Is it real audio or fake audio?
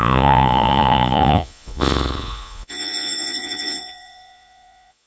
fake